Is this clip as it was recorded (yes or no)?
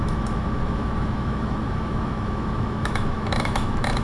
no